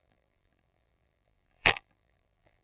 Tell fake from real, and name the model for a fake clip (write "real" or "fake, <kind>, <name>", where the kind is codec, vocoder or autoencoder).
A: fake, vocoder, BigVGAN v2